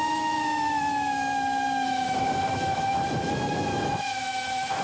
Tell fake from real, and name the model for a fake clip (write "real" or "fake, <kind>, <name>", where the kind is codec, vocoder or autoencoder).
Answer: fake, autoencoder, DAC-VAE